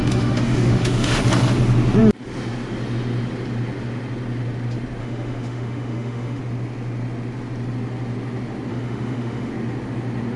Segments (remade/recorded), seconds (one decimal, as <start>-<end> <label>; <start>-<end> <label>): 0.0-1.2 remade; 1.2-5.0 recorded; 5.0-6.4 remade; 6.4-8.7 recorded; 8.7-9.5 remade; 9.5-10.4 recorded